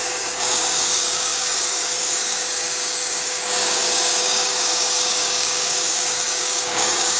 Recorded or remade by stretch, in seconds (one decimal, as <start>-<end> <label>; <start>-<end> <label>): 0.0-7.2 remade

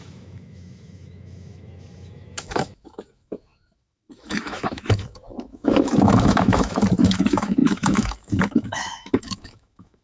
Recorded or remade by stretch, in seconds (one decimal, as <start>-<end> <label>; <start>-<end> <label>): 0.0-10.0 remade

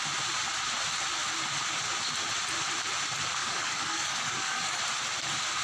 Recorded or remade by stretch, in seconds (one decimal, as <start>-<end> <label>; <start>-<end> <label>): 0.0-3.4 recorded; 3.4-4.8 remade; 4.8-5.6 recorded

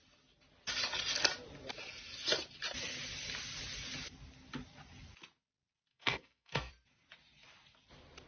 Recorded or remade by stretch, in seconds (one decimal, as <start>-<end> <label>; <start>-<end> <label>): 0.0-5.9 recorded; 5.9-6.7 remade; 6.7-8.3 recorded

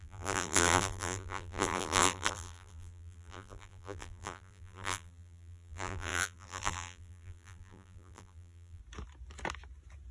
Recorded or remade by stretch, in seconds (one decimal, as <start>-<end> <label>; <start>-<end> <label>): 0.0-8.8 remade; 8.8-10.1 recorded